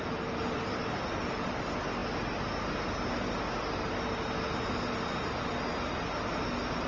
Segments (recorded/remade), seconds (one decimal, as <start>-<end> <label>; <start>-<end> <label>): 0.0-6.9 recorded